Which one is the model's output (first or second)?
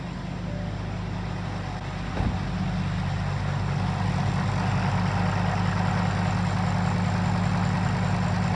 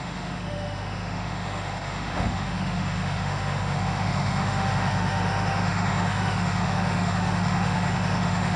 second